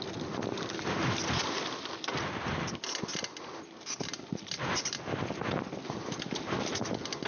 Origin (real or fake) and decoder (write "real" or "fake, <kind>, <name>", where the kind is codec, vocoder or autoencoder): real